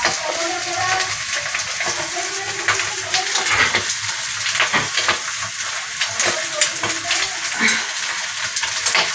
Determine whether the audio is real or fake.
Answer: real